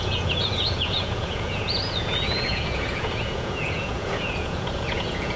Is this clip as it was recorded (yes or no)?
no